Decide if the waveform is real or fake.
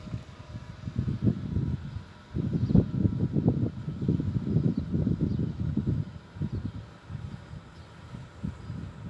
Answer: real